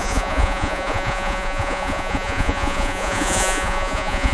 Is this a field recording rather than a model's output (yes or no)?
no